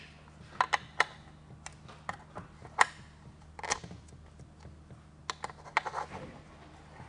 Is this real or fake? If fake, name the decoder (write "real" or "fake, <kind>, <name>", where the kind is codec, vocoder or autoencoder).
real